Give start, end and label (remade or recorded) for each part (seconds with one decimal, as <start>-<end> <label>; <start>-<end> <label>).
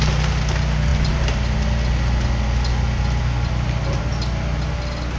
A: 0.0-5.2 recorded